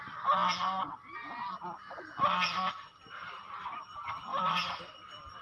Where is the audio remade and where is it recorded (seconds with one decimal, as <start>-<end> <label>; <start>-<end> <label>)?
0.0-4.3 recorded; 4.3-4.8 remade; 4.8-5.4 recorded